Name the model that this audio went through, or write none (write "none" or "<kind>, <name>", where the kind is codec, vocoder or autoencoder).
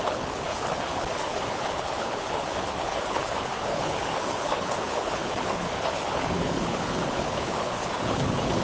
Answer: codec, HILCodec